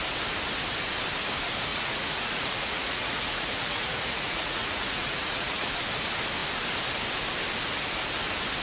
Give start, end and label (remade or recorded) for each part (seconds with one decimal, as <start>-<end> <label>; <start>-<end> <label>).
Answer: 0.0-1.7 recorded; 1.7-5.7 remade; 5.7-8.6 recorded